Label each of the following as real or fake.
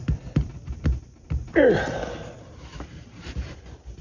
real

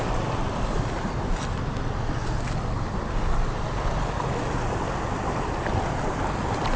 fake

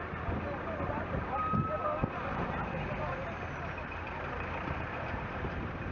fake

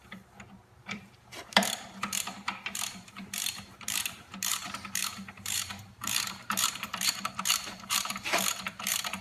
fake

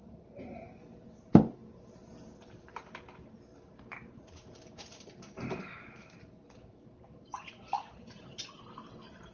fake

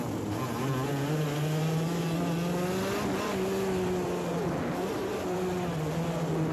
real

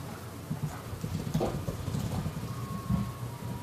fake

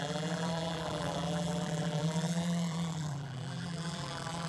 fake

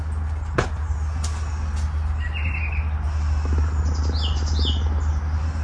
real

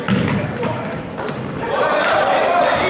fake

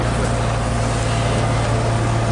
real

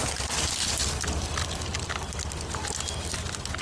real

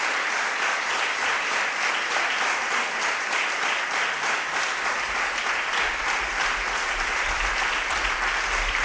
fake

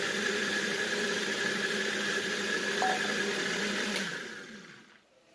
fake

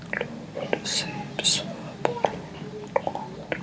real